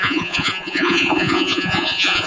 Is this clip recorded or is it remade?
remade